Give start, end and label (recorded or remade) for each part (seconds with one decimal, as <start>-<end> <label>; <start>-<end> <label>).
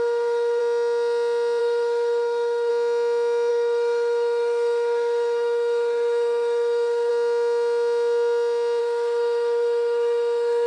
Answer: 0.0-0.6 remade; 0.6-1.6 recorded; 1.6-2.7 remade; 2.7-3.5 recorded; 3.5-7.1 remade; 7.1-8.8 recorded; 8.8-10.7 remade